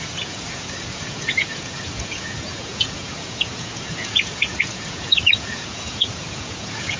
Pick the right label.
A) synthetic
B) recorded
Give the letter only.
A